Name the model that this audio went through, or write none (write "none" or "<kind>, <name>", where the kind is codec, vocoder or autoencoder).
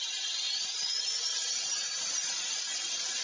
none